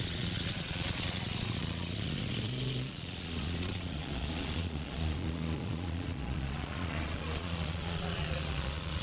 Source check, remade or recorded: remade